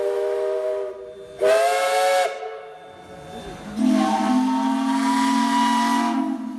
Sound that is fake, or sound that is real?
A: real